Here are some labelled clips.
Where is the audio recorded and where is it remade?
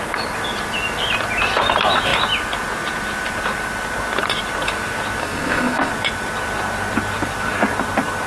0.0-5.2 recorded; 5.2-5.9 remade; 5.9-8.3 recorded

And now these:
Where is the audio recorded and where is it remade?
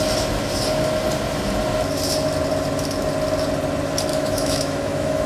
0.0-4.1 recorded; 4.1-5.3 remade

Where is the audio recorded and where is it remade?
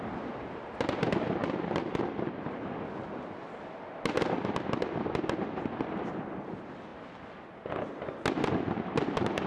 0.0-9.5 recorded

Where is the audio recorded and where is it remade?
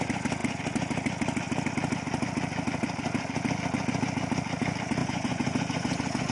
0.0-5.0 recorded; 5.0-6.3 remade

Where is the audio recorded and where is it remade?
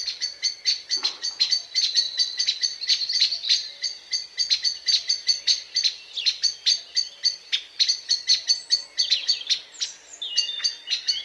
0.0-11.2 recorded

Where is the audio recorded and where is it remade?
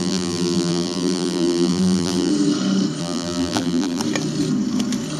0.0-2.3 remade; 2.3-3.0 recorded; 3.0-4.0 remade; 4.0-5.2 recorded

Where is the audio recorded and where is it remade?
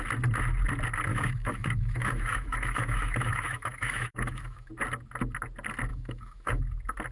0.0-1.1 recorded; 1.1-4.7 remade; 4.7-5.9 recorded; 5.9-6.6 remade; 6.6-7.1 recorded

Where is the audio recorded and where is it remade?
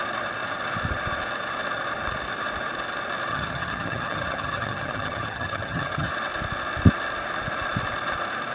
0.0-3.3 recorded; 3.3-6.1 remade; 6.1-8.5 recorded